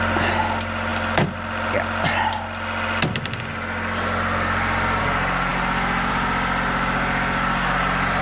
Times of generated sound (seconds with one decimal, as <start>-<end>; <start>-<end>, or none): none